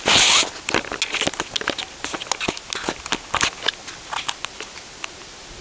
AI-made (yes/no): no